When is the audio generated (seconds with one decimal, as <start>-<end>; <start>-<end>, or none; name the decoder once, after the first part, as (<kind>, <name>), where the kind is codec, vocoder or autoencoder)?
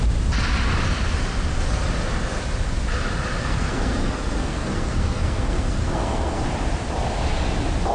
3.4-6.4 (codec, SNAC)